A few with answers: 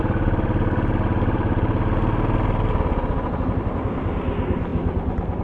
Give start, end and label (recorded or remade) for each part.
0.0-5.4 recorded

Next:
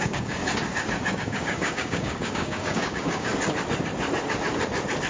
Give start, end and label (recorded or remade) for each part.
0.0-0.4 remade; 0.4-1.1 recorded; 1.1-3.3 remade; 3.3-5.1 recorded

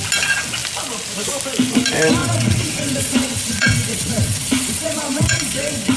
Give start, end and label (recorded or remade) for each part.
0.0-2.2 recorded; 2.2-6.0 remade

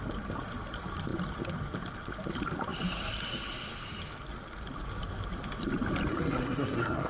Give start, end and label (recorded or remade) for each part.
0.0-6.1 recorded; 6.1-7.1 remade